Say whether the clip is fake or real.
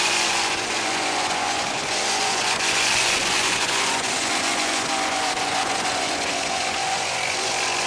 fake